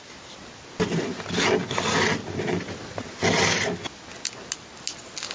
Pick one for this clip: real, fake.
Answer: real